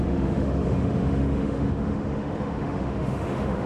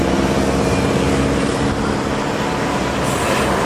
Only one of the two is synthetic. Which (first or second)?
first